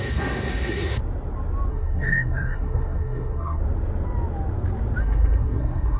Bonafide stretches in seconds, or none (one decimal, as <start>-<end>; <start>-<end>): 1.0-1.7; 3.6-5.0